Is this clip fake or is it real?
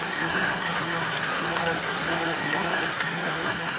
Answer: fake